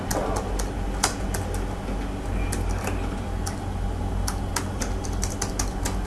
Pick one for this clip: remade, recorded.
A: recorded